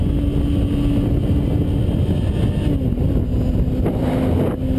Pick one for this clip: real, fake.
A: real